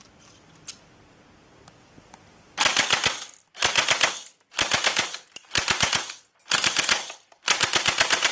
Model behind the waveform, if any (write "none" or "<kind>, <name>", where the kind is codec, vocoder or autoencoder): vocoder, BigVGAN v2